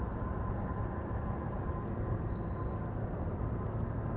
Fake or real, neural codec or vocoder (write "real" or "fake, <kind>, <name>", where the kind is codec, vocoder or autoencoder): real